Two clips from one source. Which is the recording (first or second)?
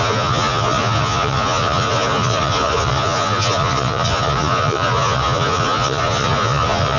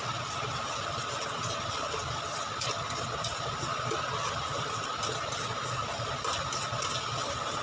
second